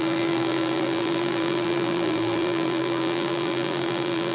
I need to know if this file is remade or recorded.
remade